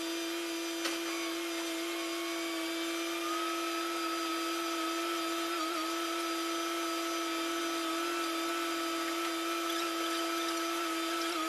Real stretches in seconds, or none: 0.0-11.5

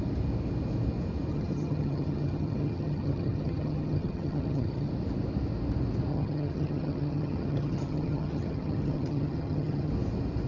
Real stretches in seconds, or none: 0.0-1.3; 4.9-6.1; 9.9-10.5

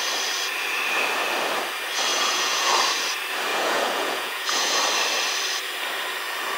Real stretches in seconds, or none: 0.0-2.1; 2.7-3.5; 4.8-6.6